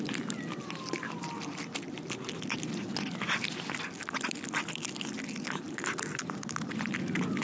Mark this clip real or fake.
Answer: real